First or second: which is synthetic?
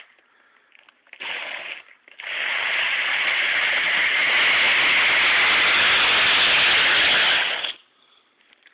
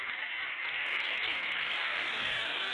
second